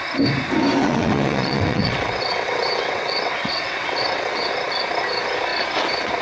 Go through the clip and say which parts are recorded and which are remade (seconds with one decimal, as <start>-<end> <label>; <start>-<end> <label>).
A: 0.0-0.8 recorded; 0.8-4.5 remade; 4.5-6.2 recorded